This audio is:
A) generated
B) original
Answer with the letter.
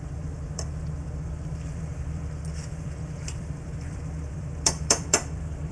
A